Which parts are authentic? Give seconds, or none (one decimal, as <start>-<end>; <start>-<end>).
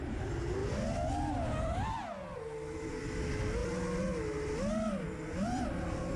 0.0-6.2